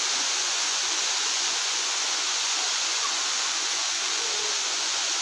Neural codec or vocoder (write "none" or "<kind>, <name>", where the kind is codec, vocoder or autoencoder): vocoder, Vocos